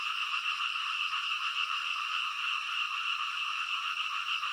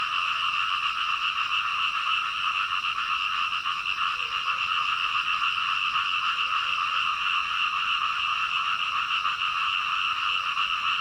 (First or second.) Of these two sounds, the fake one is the first